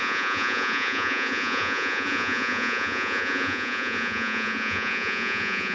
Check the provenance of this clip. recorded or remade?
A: remade